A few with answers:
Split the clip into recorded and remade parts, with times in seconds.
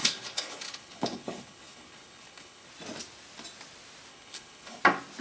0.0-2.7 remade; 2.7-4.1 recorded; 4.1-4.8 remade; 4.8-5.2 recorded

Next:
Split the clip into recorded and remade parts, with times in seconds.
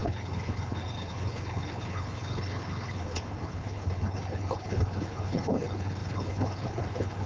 0.0-7.3 remade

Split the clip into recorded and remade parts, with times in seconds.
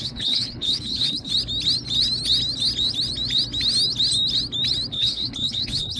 0.0-1.3 remade; 1.3-4.9 recorded; 4.9-6.0 remade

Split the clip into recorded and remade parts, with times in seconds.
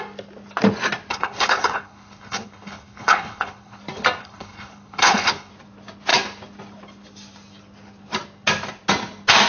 0.0-1.1 recorded; 1.1-3.8 remade; 3.8-4.2 recorded; 4.2-5.5 remade; 5.5-9.5 recorded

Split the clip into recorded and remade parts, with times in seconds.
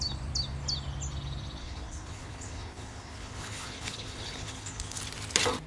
0.0-1.6 recorded; 1.6-5.0 remade; 5.0-5.7 recorded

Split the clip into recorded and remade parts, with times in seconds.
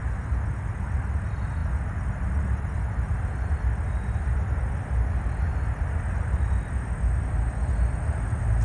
0.0-8.6 recorded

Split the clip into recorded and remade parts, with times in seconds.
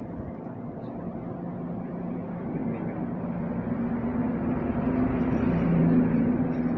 0.0-6.8 recorded